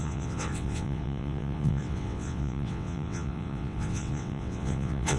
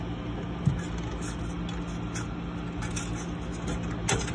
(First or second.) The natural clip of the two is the second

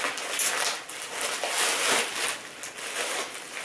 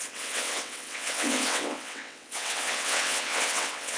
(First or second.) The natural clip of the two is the first